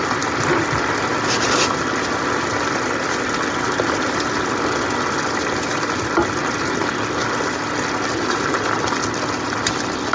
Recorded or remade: recorded